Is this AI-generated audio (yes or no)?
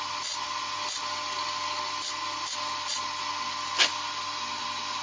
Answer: no